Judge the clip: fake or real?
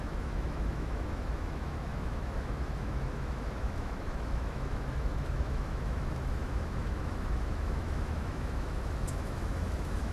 fake